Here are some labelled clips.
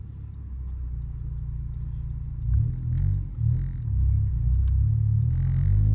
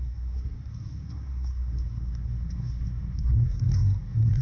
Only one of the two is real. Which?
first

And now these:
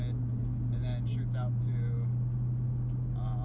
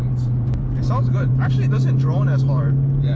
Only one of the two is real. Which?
first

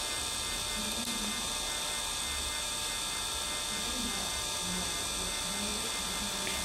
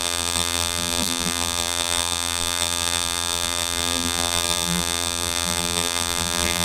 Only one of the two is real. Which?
first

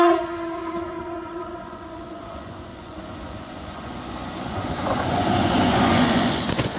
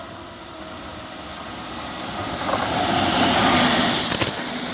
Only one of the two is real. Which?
second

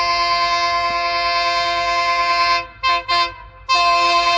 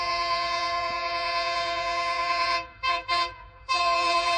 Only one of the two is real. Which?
first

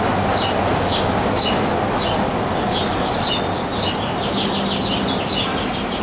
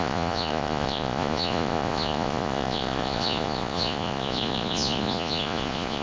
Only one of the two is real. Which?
first